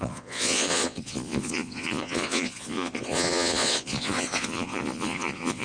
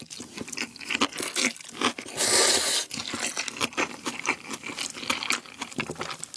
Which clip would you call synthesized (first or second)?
first